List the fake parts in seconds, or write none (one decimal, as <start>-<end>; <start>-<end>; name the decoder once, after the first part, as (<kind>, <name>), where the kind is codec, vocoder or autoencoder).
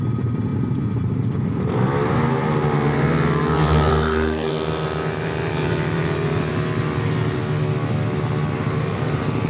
3.9-4.5 (codec, SNAC)